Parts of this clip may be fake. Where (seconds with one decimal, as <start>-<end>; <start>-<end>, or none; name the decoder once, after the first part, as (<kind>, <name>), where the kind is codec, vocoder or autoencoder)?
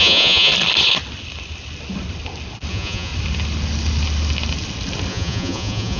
0.0-0.5 (vocoder, Vocos); 2.7-3.1; 5.1-6.0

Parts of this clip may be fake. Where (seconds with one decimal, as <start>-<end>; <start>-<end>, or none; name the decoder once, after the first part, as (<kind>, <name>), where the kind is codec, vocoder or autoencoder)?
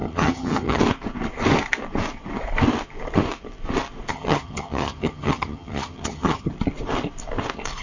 0.0-0.8 (vocoder, HiFi-GAN); 4.1-6.5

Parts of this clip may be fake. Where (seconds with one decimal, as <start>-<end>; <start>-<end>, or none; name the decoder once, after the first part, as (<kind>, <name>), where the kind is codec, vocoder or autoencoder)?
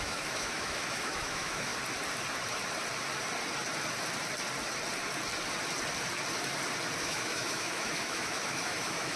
0.0-1.7 (autoencoder, DAC-VAE); 7.0-9.2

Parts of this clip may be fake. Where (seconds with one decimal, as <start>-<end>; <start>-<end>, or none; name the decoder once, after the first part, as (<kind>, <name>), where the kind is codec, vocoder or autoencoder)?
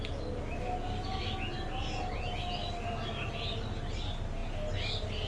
none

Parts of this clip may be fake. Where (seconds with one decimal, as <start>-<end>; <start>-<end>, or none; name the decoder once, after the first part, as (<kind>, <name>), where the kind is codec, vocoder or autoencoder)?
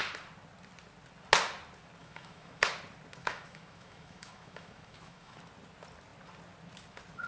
2.0-2.7 (autoencoder, DAC-VAE); 3.2-5.4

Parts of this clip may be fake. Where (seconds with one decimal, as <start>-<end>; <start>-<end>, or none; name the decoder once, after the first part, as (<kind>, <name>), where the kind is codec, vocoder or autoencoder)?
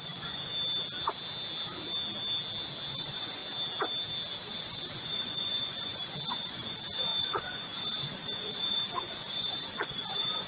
0.0-0.5 (vocoder, Vocos); 2.9-3.4; 4.5-10.5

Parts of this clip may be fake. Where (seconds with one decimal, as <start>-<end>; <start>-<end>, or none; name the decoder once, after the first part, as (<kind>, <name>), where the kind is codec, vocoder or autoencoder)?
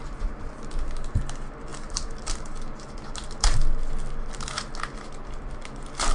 none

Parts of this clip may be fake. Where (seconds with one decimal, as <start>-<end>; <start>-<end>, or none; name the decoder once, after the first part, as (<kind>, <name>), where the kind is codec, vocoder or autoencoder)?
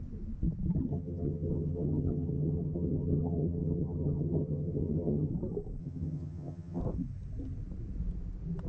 0.9-5.3 (vocoder, HiFi-GAN); 5.8-6.8